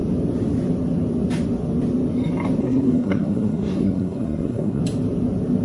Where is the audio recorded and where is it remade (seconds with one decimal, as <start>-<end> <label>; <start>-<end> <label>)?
0.0-2.6 recorded; 2.6-4.8 remade; 4.8-5.6 recorded

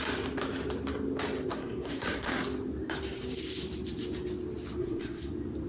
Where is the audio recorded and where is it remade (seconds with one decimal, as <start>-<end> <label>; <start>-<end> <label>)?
0.0-1.5 recorded; 1.5-2.4 remade; 2.4-4.8 recorded; 4.8-5.3 remade; 5.3-5.7 recorded

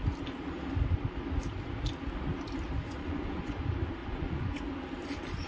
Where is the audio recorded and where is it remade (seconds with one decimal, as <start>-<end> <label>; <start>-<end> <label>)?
0.0-3.0 recorded; 3.0-3.6 remade; 3.6-4.0 recorded; 4.0-4.6 remade; 4.6-5.5 recorded